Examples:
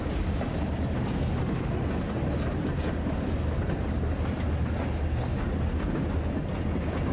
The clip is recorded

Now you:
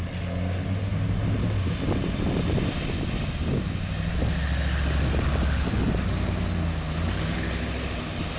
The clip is recorded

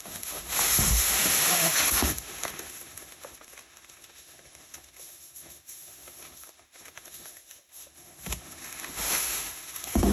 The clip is remade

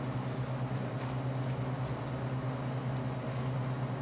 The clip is recorded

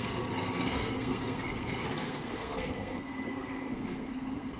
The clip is remade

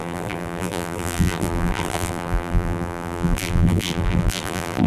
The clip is remade